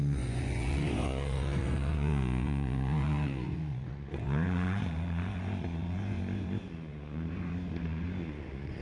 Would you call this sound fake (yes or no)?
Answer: yes